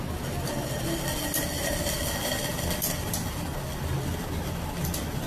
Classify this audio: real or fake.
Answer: real